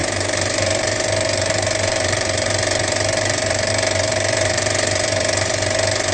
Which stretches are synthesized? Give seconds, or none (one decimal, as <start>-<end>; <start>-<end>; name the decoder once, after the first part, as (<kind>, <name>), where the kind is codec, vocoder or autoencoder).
0.0-6.1 (vocoder, BigVGAN v2)